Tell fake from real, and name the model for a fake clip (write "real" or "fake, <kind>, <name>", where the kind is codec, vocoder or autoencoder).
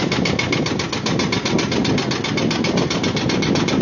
real